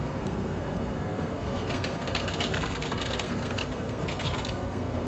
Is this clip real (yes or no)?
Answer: no